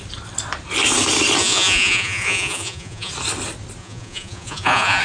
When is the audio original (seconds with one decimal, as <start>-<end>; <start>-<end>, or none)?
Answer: 0.0-1.4; 3.1-3.8